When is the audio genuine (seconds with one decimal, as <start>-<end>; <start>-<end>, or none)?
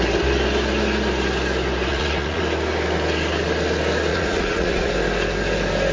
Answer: 0.0-1.9; 2.4-4.1; 4.9-5.9